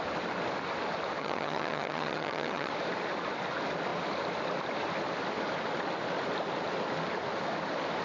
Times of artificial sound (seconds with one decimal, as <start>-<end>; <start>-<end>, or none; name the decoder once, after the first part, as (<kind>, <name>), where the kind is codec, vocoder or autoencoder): 1.2-2.7 (vocoder, HiFi-GAN)